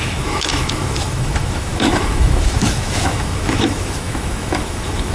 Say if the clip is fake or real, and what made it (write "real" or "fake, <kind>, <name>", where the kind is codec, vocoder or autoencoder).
fake, autoencoder, DAC-VAE